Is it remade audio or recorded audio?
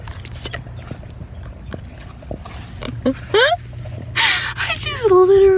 recorded